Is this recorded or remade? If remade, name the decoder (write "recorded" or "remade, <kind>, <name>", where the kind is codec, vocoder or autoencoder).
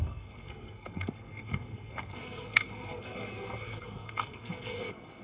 remade, codec, SNAC